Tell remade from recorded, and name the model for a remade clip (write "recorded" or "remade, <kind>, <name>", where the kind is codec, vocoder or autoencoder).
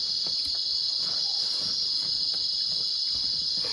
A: recorded